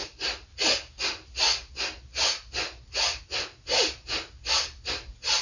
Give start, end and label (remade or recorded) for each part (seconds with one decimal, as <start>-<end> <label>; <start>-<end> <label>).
0.0-5.4 recorded